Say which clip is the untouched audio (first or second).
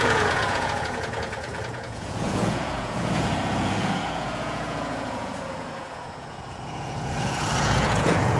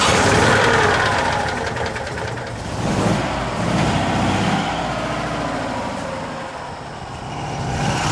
second